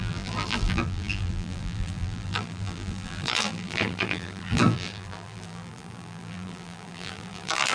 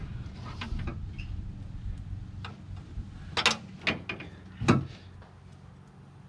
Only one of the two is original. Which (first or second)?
second